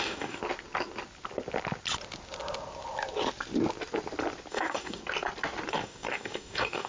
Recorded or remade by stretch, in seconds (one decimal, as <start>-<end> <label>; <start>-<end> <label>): 0.0-0.4 remade; 0.4-4.5 recorded; 4.5-5.0 remade; 5.0-5.7 recorded; 5.7-6.9 remade